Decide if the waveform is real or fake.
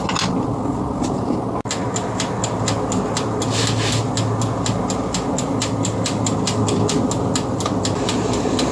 real